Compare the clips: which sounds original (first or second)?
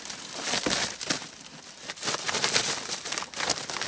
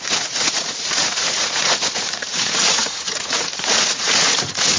first